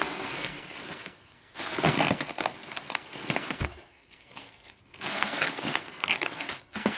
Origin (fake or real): fake